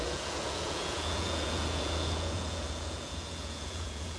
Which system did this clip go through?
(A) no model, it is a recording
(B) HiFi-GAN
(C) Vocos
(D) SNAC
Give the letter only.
C